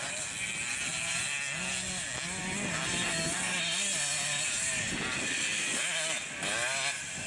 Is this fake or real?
real